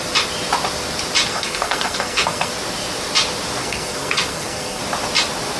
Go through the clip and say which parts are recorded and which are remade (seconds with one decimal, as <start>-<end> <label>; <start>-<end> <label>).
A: 0.0-1.3 recorded; 1.3-2.5 remade; 2.5-3.6 recorded; 3.6-4.8 remade; 4.8-5.6 recorded

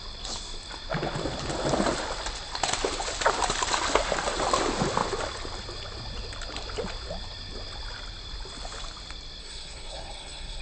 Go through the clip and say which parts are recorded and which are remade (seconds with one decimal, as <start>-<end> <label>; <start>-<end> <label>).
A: 0.0-9.4 recorded; 9.4-10.6 remade

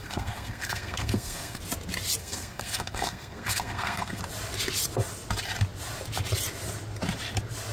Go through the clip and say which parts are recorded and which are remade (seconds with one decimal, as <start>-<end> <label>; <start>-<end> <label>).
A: 0.0-1.6 remade; 1.6-2.2 recorded; 2.2-4.2 remade; 4.2-7.7 recorded

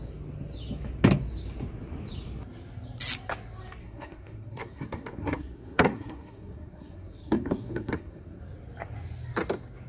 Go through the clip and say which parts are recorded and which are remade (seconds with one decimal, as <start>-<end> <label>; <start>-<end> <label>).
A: 0.0-3.8 recorded; 3.8-8.4 remade; 8.4-9.9 recorded

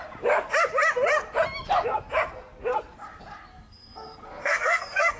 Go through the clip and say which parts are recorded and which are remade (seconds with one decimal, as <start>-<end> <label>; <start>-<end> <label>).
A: 0.0-3.5 recorded; 3.5-5.2 remade

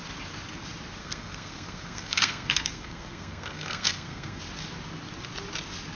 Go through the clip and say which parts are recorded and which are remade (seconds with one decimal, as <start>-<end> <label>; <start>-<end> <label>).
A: 0.0-1.0 recorded; 1.0-4.4 remade; 4.4-5.9 recorded

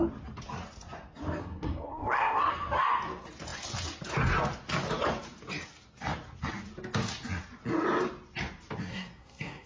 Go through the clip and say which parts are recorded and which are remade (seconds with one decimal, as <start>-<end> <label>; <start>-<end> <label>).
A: 0.0-1.4 recorded; 1.4-2.5 remade; 2.5-8.9 recorded; 8.9-9.7 remade